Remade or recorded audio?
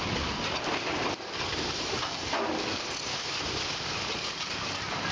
recorded